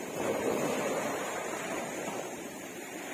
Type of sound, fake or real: fake